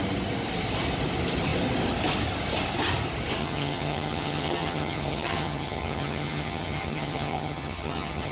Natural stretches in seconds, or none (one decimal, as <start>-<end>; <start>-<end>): 0.0-3.4